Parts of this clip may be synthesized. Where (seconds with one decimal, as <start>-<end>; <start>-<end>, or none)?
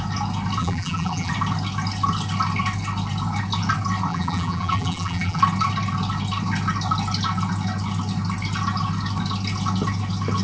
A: 0.6-1.3; 4.1-5.4